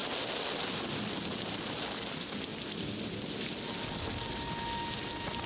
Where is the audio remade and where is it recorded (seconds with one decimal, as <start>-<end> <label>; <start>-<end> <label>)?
0.0-5.5 recorded